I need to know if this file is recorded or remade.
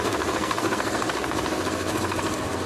remade